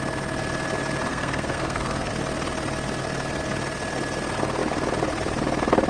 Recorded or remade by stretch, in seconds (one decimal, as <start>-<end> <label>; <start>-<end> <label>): 0.0-1.1 recorded; 1.1-2.1 remade; 2.1-5.9 recorded